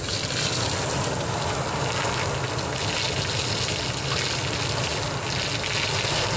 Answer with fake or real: real